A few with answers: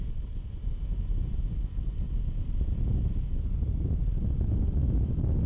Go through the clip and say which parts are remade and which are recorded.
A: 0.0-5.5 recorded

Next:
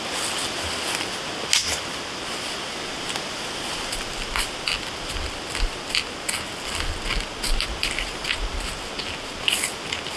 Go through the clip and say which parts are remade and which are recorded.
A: 0.0-10.2 recorded

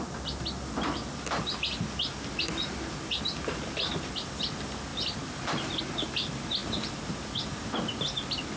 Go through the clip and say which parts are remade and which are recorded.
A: 0.0-8.6 recorded

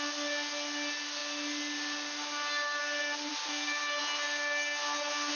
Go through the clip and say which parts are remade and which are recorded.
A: 0.0-5.4 recorded

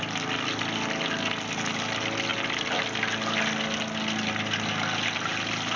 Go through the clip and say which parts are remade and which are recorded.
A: 0.0-5.8 recorded

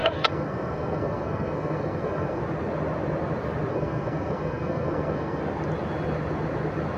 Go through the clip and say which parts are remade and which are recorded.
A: 0.0-2.4 remade; 2.4-3.7 recorded; 3.7-5.4 remade; 5.4-7.0 recorded

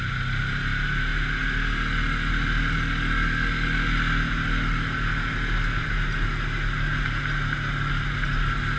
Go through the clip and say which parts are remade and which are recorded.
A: 0.0-8.8 recorded

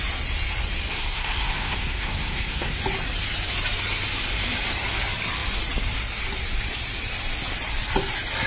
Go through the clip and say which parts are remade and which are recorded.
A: 0.0-0.9 recorded; 0.9-2.8 remade; 2.8-8.5 recorded